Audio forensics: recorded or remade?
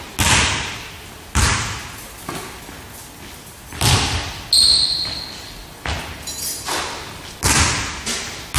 recorded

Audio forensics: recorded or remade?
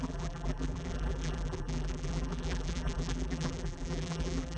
remade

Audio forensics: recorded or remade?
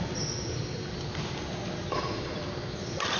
recorded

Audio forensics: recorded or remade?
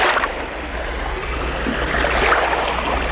recorded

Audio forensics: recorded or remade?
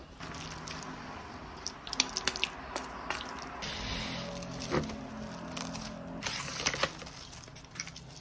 recorded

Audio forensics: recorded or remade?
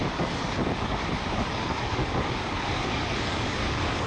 remade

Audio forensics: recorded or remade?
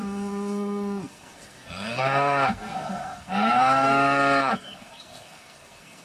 remade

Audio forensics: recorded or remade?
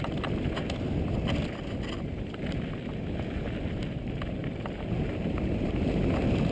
recorded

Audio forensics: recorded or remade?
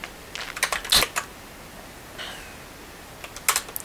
recorded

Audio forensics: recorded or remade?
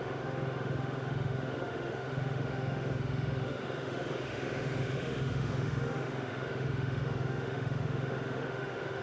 remade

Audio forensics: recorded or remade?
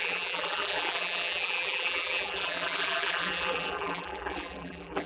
remade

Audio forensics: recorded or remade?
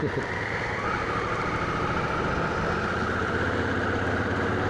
recorded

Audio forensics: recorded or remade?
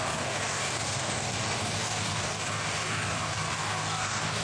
remade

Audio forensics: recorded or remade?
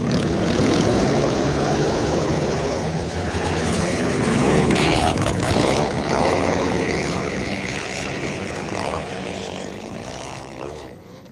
remade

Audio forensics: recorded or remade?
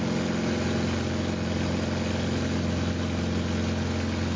recorded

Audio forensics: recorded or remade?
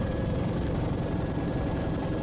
remade